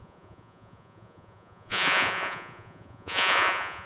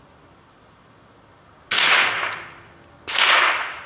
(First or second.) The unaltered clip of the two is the second